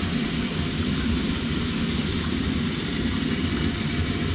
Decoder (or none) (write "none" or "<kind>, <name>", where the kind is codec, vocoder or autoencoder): none